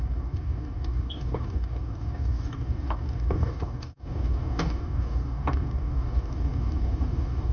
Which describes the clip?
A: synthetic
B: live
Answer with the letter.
A